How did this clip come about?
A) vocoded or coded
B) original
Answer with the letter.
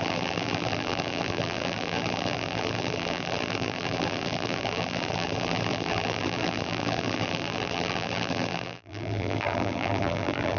A